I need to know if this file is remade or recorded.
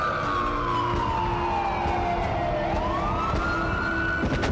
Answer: recorded